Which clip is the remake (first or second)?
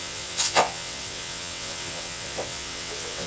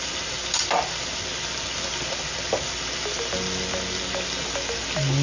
first